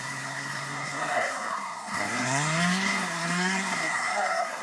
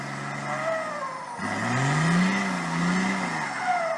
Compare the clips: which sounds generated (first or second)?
first